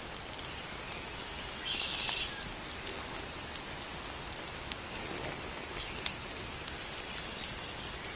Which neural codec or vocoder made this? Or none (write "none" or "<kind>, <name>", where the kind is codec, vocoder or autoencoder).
none